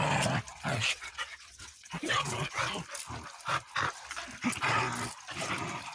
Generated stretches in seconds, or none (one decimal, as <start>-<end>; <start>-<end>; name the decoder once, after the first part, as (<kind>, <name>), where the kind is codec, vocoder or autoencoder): 0.5-2.7 (vocoder, WaveNeXt)